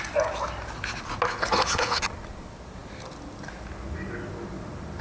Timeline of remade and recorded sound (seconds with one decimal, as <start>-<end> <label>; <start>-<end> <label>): 0.0-1.3 recorded; 1.3-2.0 remade; 2.0-5.0 recorded